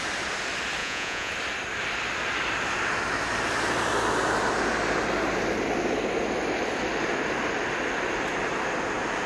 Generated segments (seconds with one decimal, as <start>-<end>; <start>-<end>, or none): 0.8-1.3